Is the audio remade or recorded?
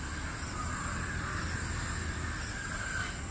recorded